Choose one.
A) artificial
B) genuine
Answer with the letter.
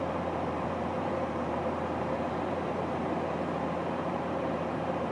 A